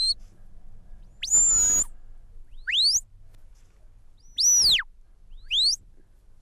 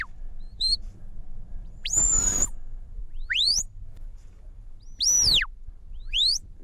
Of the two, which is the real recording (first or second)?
first